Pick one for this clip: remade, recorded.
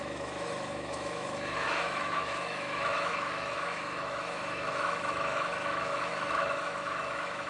remade